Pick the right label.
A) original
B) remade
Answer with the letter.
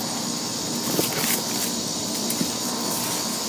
A